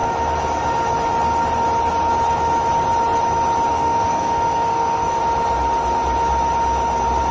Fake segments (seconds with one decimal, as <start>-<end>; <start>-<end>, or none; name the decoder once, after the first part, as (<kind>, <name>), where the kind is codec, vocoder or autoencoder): 3.7-5.2 (codec, SNAC)